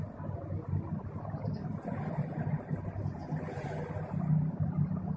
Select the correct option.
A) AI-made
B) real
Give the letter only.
B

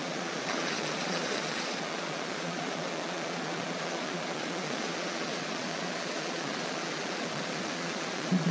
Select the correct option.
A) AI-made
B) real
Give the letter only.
A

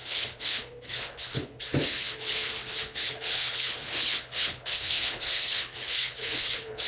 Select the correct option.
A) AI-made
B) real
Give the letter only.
A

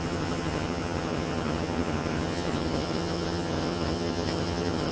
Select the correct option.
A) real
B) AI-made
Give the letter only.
B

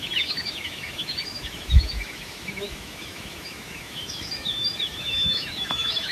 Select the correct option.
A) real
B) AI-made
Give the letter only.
B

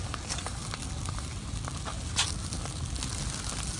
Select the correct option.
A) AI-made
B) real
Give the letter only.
B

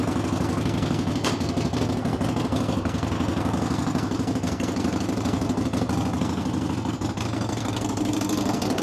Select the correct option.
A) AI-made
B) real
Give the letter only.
A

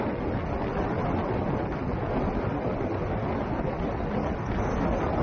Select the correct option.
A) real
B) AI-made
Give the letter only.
A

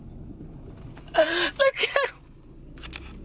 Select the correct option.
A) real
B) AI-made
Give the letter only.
A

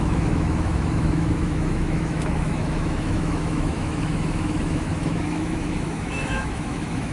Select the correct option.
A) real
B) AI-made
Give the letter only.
B